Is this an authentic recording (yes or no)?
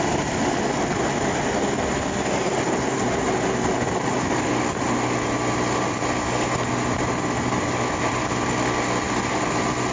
yes